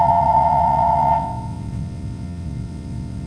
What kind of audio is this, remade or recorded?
remade